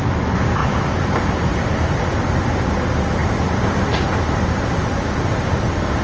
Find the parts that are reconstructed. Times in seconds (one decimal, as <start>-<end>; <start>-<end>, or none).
0.6-2.0